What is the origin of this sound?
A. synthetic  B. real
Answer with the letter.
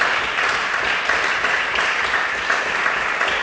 B